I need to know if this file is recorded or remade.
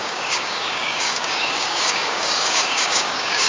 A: remade